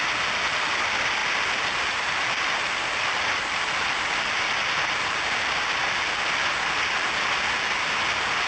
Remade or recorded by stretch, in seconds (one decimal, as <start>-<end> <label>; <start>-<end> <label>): 0.0-8.5 recorded

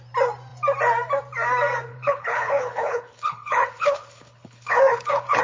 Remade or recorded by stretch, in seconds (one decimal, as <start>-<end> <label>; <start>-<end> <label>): 0.0-1.9 recorded; 1.9-5.4 remade

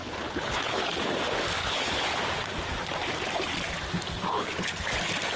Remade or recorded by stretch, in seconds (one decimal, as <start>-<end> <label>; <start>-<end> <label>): 0.0-1.0 remade; 1.0-1.6 recorded; 1.6-2.2 remade; 2.2-4.2 recorded; 4.2-4.7 remade; 4.7-5.4 recorded

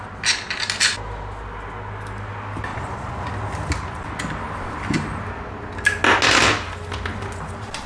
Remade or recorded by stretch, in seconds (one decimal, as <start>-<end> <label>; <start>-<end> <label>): 0.0-2.7 recorded; 2.7-3.3 remade; 3.3-7.9 recorded

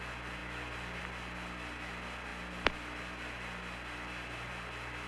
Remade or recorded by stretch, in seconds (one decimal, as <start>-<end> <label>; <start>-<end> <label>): 0.0-5.1 recorded

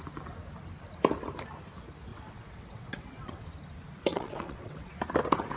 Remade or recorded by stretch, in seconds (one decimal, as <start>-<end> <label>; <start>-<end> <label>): 0.0-2.1 recorded; 2.1-3.5 remade; 3.5-4.1 recorded; 4.1-4.9 remade; 4.9-5.6 recorded

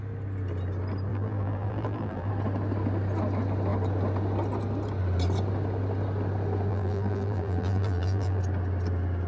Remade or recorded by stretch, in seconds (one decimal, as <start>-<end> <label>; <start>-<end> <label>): 0.0-1.1 recorded; 1.1-2.3 remade; 2.3-6.7 recorded; 6.7-8.4 remade; 8.4-9.3 recorded